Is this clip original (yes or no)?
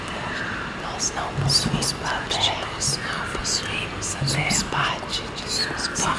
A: yes